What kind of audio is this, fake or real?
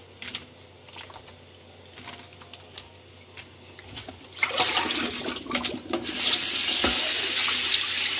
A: real